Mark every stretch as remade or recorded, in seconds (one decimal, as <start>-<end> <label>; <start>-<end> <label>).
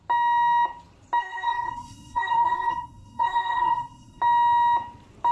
0.0-1.2 recorded; 1.2-4.2 remade; 4.2-5.3 recorded